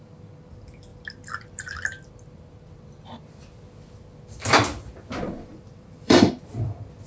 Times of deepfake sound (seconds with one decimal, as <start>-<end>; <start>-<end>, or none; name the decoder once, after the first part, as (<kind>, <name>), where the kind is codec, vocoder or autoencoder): 5.5-6.3 (vocoder, BigVGAN v2)